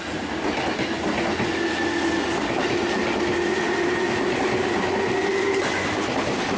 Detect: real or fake real